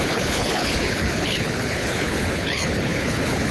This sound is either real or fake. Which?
fake